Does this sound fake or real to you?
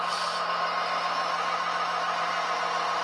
real